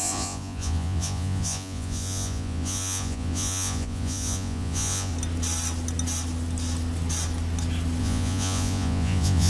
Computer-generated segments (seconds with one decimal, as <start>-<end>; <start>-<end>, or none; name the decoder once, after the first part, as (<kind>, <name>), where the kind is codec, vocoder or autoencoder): 0.0-5.1 (vocoder, Vocos); 8.0-9.5